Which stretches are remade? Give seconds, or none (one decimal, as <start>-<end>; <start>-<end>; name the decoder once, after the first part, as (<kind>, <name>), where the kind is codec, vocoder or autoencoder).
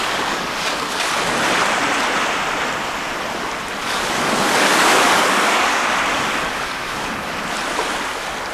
0.0-1.1 (codec, DAC); 3.8-7.3